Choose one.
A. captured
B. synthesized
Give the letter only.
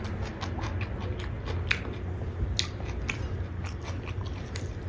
A